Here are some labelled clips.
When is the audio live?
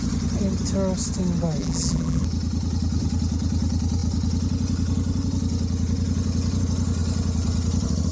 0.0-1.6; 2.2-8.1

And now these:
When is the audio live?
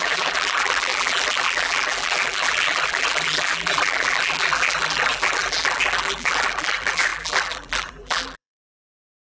none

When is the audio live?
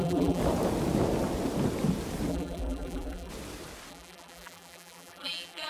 0.4-2.3; 3.3-3.9